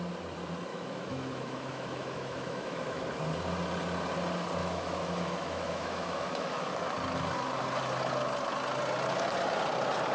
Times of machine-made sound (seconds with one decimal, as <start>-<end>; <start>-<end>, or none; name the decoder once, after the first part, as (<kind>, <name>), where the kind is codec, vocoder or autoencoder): 0.7-3.0 (autoencoder, DAC-VAE); 4.6-6.7